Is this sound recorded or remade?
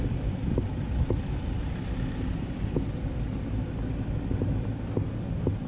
recorded